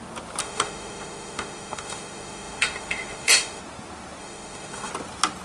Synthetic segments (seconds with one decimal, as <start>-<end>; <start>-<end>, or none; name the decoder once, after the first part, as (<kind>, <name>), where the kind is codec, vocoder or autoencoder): 0.4-3.6 (autoencoder, DAC-VAE); 4.2-4.9